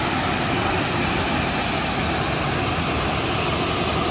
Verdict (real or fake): real